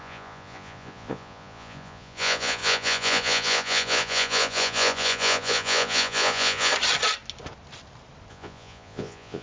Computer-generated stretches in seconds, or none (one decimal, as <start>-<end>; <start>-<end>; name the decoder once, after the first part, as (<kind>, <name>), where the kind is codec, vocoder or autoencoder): 0.0-6.7 (vocoder, Vocos); 8.3-9.4